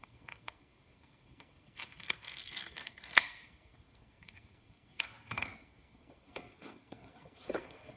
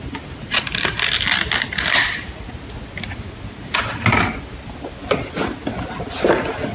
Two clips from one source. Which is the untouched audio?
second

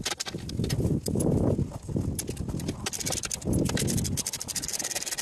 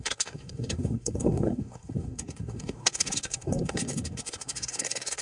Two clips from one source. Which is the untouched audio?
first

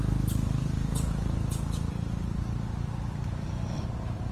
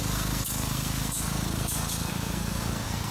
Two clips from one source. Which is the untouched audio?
first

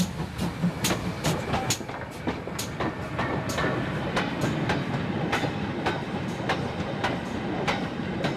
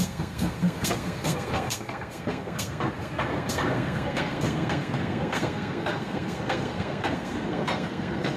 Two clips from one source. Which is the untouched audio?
first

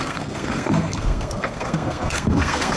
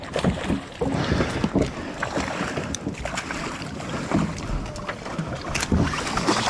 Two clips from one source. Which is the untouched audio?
second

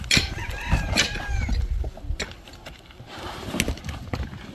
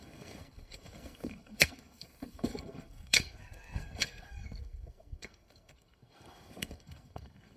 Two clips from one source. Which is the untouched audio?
first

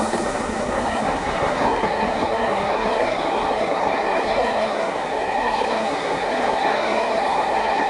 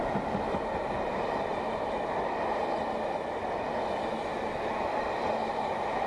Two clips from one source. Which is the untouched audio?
second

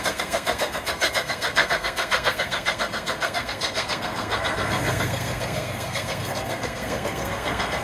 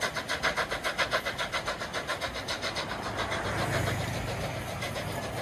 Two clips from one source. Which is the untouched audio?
second